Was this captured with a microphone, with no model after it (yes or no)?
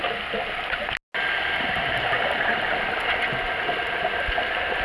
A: yes